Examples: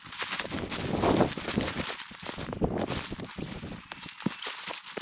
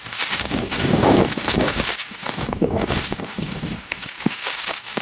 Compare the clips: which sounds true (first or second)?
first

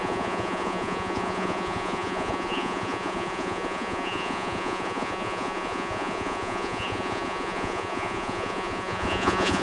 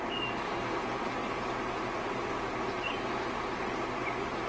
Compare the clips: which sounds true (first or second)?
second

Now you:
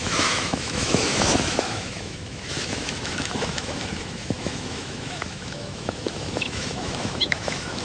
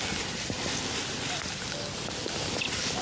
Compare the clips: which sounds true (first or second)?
second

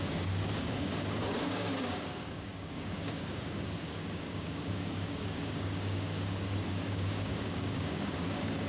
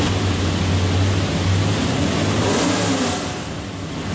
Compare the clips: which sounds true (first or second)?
second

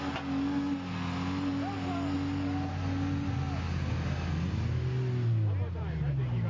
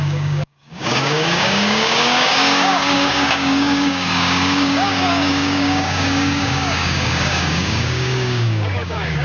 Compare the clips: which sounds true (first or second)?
first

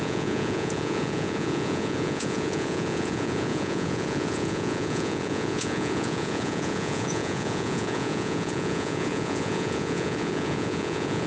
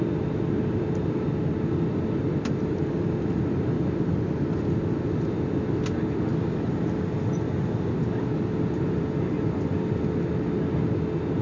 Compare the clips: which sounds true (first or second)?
second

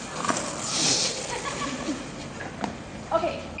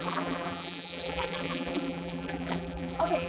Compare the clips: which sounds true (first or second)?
first